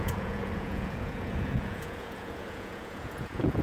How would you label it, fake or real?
fake